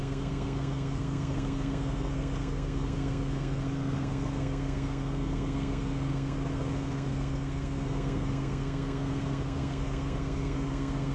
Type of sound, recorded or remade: remade